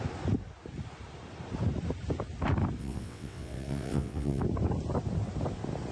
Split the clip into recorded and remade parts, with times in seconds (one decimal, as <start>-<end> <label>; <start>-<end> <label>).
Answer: 0.0-2.8 recorded; 2.8-4.4 remade; 4.4-5.9 recorded